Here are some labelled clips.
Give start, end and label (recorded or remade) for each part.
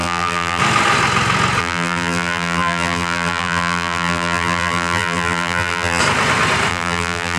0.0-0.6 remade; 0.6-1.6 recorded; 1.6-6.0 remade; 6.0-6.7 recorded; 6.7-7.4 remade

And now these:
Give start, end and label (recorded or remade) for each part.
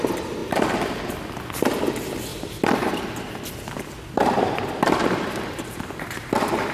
0.0-0.4 recorded; 0.4-1.9 remade; 1.9-2.3 recorded; 2.3-6.3 remade; 6.3-6.7 recorded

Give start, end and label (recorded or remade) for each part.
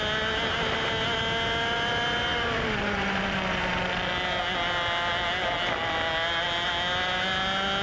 0.0-2.3 recorded; 2.3-3.7 remade; 3.7-7.8 recorded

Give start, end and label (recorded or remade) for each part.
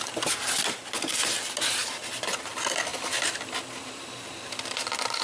0.0-5.2 recorded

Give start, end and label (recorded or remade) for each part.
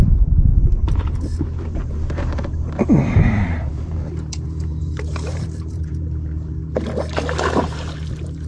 0.0-6.6 remade; 6.6-7.6 recorded; 7.6-8.5 remade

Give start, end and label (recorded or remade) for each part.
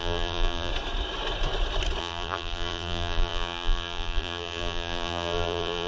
0.0-0.7 remade; 0.7-2.0 recorded; 2.0-5.9 remade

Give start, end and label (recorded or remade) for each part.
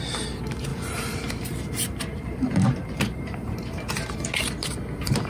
0.0-0.7 recorded; 0.7-3.9 remade; 3.9-5.3 recorded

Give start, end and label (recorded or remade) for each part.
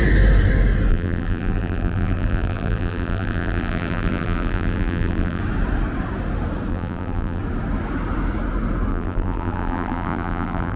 0.0-0.9 recorded; 0.9-5.4 remade; 5.4-6.7 recorded; 6.7-7.4 remade; 7.4-8.9 recorded; 8.9-10.8 remade